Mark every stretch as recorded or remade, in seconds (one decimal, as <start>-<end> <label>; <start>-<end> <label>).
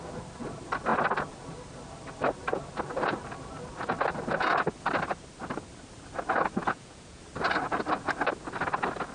0.0-6.6 recorded; 6.6-7.2 remade; 7.2-9.1 recorded